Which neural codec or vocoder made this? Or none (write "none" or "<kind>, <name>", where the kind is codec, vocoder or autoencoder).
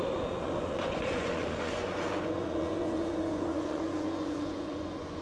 vocoder, Vocos